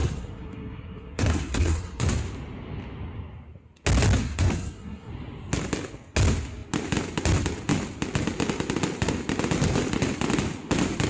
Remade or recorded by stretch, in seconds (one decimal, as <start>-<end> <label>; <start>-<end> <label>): 0.0-2.1 remade; 2.1-4.2 recorded; 4.2-5.1 remade; 5.1-11.1 recorded